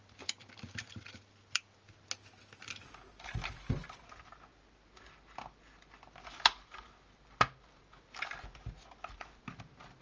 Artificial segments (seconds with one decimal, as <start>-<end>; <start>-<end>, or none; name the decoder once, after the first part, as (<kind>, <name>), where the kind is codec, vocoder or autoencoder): none

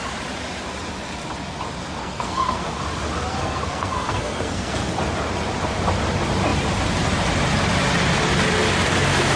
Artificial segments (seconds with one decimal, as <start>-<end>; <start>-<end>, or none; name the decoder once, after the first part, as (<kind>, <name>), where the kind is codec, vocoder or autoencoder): 2.0-2.8 (codec, SNAC); 3.3-4.9